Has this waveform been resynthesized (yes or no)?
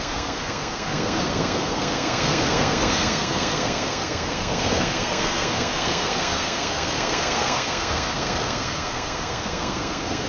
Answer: yes